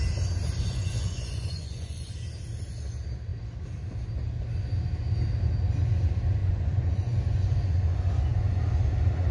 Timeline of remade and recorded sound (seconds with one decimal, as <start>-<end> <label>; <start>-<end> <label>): 0.0-0.6 recorded; 0.6-2.1 remade; 2.1-6.4 recorded; 6.4-8.6 remade; 8.6-9.3 recorded